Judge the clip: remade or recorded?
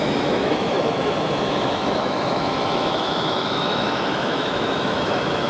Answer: remade